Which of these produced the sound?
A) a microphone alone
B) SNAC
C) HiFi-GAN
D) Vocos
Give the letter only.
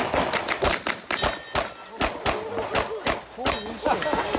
A